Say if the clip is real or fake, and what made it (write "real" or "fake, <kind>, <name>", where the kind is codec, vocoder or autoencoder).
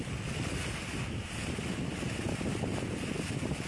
real